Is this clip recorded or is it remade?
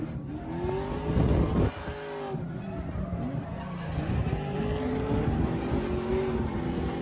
recorded